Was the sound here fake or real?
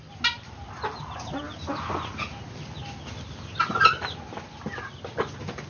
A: real